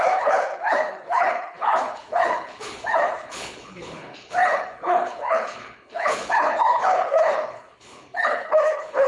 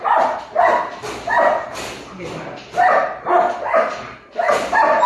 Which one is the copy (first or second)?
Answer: first